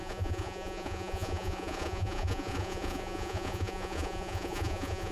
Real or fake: fake